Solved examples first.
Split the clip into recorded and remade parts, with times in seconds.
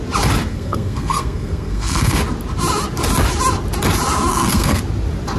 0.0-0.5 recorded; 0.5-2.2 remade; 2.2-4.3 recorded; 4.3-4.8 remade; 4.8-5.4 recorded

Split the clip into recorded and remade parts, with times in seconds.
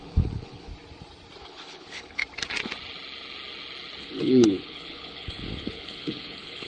0.0-0.7 remade; 0.7-1.4 recorded; 1.4-2.2 remade; 2.2-4.0 recorded; 4.0-6.7 remade